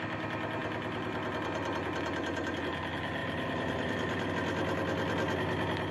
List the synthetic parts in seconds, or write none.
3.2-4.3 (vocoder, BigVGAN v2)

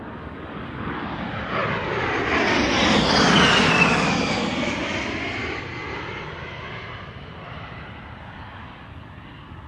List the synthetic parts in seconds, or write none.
0.0-1.6 (codec, DAC); 3.3-4.4; 8.2-9.7

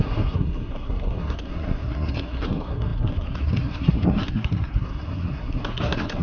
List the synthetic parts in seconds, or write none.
0.0-6.2 (codec, SNAC)

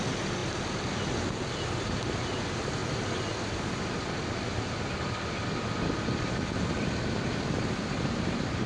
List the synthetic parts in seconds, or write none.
none

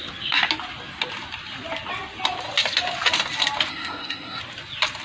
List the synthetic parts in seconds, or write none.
3.7-4.4 (codec, SNAC)

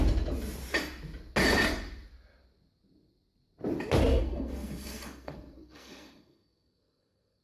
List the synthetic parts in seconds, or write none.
4.1-7.4 (codec, SNAC)

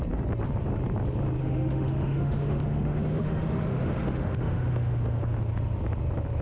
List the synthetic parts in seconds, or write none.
1.4-5.2 (autoencoder, DAC-VAE)